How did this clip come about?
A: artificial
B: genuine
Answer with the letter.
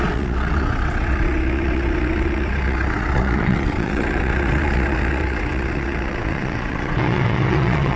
A